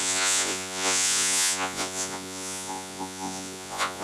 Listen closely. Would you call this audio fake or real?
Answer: fake